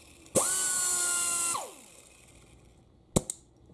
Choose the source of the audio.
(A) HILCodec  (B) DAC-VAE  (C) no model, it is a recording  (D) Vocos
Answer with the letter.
C